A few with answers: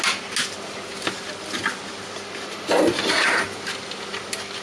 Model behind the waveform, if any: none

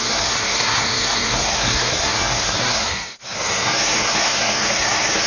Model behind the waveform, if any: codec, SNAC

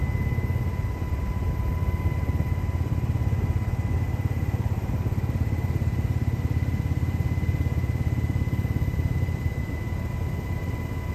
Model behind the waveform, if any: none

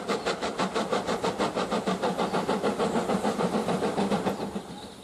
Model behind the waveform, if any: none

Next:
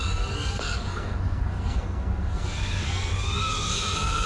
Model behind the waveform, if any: codec, SNAC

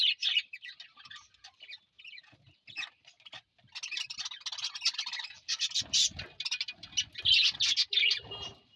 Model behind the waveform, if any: none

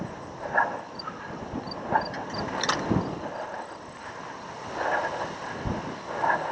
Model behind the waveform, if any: none